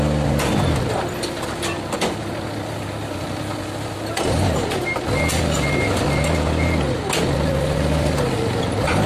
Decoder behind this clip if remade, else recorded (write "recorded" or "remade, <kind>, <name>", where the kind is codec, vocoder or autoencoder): recorded